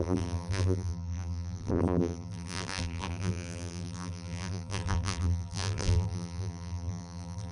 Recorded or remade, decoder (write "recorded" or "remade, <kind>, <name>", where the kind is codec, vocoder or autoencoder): remade, vocoder, BigVGAN v2